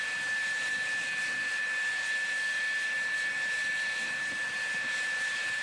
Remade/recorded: recorded